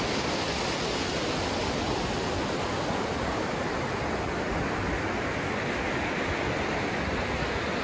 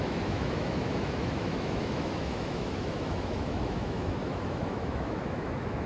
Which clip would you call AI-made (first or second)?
second